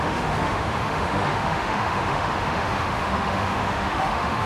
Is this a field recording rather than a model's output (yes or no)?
no